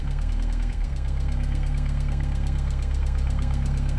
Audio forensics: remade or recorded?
remade